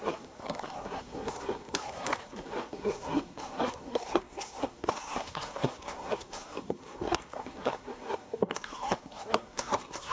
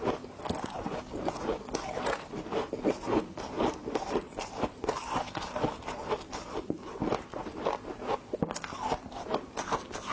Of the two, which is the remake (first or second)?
first